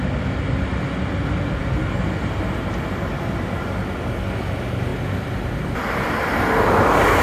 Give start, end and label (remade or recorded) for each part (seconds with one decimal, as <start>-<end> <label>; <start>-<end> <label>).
0.0-7.2 recorded